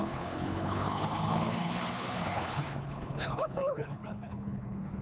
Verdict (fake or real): fake